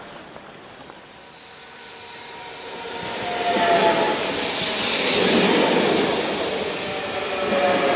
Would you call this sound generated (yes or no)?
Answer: no